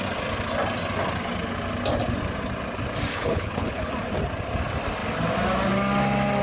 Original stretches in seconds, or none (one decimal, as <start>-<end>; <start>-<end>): 0.0-3.1; 3.9-6.4